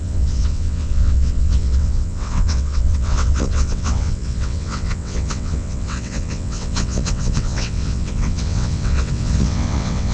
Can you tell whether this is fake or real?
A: fake